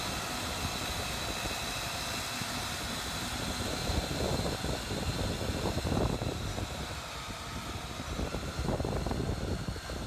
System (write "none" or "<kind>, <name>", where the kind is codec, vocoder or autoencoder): none